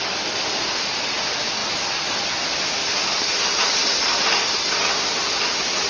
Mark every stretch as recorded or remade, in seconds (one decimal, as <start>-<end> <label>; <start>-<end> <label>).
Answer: 0.0-5.9 recorded